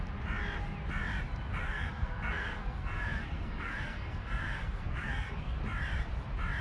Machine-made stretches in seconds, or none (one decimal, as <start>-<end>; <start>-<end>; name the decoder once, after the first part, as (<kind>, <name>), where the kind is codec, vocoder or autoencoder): 1.6-5.6 (codec, SNAC)